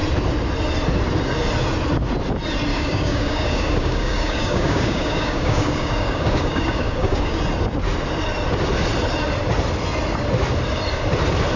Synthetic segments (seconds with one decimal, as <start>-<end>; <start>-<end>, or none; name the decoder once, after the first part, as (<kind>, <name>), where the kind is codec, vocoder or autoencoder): 2.7-7.4 (codec, DAC)